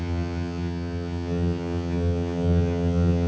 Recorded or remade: remade